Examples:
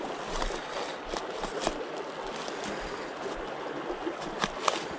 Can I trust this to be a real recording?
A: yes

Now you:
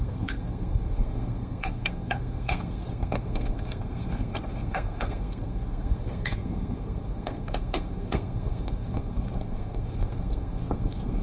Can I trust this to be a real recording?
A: no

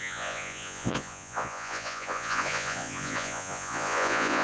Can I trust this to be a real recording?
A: no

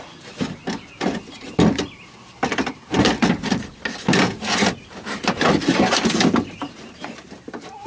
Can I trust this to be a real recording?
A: yes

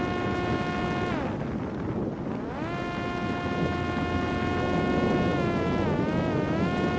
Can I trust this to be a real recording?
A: yes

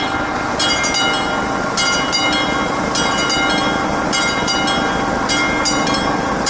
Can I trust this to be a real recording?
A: yes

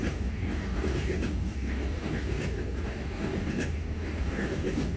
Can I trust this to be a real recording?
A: no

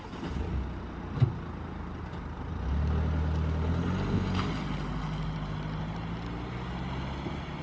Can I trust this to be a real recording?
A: yes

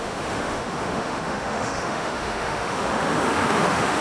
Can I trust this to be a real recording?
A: no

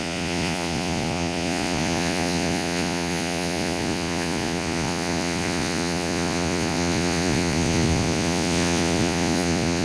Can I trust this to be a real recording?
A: no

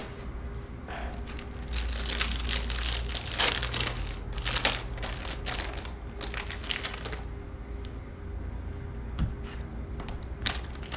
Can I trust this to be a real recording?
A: yes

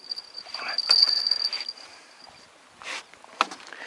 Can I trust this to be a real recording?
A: yes